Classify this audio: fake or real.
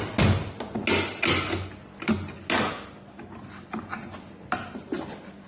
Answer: real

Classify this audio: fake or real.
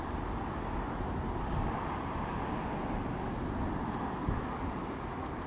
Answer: real